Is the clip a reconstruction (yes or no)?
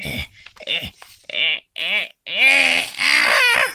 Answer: no